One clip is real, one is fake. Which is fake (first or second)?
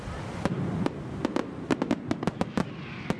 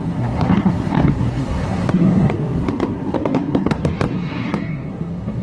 second